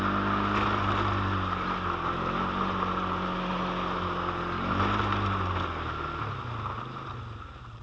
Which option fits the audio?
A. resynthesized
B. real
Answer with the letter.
B